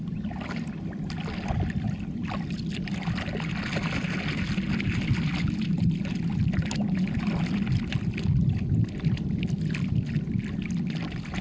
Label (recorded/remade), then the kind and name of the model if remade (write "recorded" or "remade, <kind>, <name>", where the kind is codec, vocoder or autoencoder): recorded